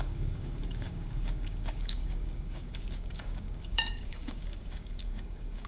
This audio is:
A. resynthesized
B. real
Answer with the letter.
A